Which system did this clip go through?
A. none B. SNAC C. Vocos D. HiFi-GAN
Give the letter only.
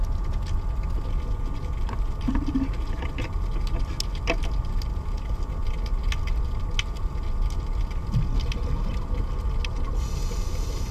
A